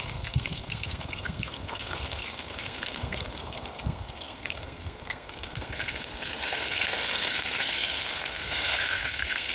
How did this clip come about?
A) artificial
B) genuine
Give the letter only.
A